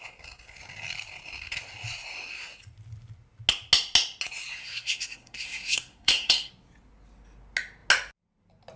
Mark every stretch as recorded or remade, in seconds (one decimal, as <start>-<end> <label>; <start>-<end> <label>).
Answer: 0.0-4.6 recorded; 4.6-6.5 remade; 6.5-8.8 recorded